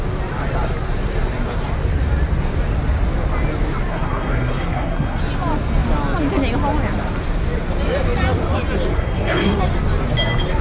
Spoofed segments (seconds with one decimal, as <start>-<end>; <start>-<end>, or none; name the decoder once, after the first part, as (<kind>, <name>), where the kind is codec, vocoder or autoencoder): 3.9-5.2 (codec, SNAC); 8.9-9.6